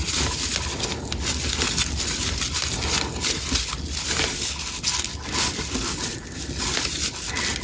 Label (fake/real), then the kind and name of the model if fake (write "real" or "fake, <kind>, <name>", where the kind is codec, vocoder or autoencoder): real